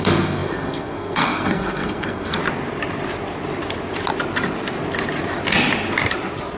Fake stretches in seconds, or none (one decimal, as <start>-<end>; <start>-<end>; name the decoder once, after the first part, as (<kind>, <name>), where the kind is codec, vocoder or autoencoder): 0.0-2.4 (codec, SNAC)